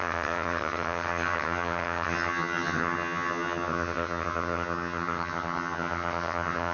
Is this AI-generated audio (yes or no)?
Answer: yes